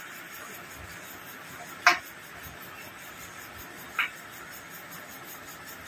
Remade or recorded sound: recorded